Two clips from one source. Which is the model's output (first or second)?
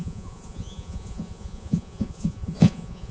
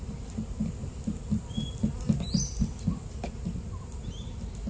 first